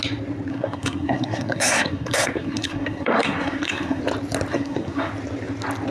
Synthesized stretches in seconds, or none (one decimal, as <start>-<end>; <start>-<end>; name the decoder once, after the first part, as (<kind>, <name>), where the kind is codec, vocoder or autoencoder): 0.5-4.0 (codec, SNAC); 4.5-5.1